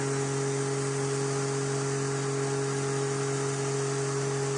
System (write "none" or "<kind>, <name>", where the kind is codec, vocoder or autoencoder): none